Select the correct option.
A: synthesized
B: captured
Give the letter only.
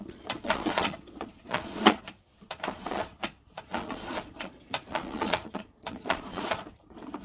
A